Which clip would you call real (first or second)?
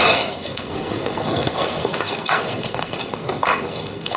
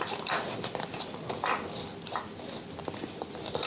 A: second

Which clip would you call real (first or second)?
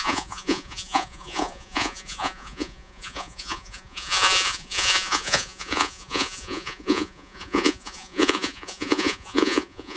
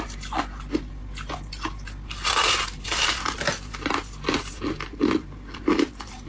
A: second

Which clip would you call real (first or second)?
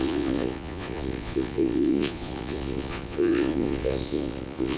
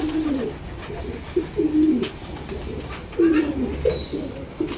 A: second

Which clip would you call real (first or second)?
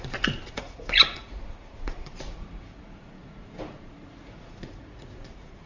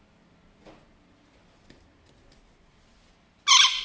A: second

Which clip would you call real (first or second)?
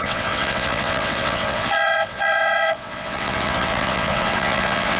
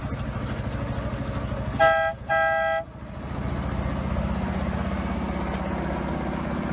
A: second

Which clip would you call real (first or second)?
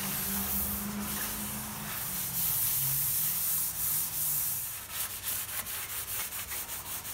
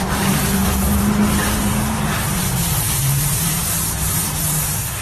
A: first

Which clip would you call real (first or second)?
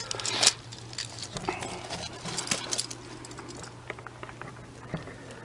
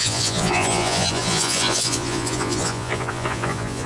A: first